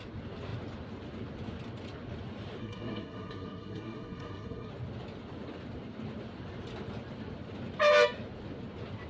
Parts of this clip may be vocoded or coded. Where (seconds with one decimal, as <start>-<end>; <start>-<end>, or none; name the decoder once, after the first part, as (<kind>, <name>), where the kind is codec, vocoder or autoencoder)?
2.6-4.7 (codec, SNAC)